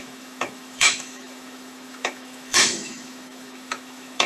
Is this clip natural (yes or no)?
no